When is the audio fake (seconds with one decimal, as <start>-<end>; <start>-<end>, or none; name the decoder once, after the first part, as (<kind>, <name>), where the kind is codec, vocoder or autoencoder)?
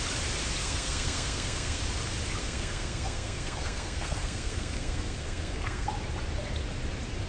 0.6-1.8 (codec, SNAC); 2.4-5.9